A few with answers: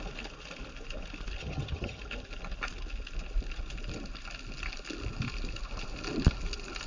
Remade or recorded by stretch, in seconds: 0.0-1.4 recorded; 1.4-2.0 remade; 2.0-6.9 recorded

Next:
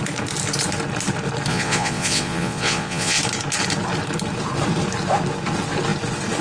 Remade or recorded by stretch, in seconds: 0.0-1.5 recorded; 1.5-3.2 remade; 3.2-6.4 recorded

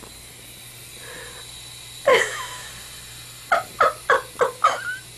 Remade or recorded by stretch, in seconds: 0.0-2.1 recorded; 2.1-2.7 remade; 2.7-5.2 recorded

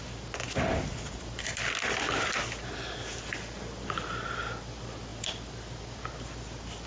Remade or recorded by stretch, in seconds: 0.0-6.9 recorded

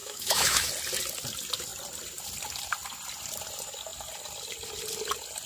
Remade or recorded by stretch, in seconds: 0.0-0.7 remade; 0.7-5.5 recorded

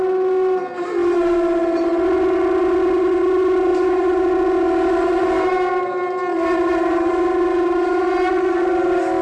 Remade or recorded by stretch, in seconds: 0.0-3.7 recorded; 3.7-4.3 remade; 4.3-6.3 recorded; 6.3-7.1 remade; 7.1-9.2 recorded